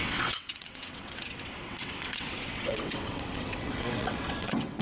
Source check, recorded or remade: remade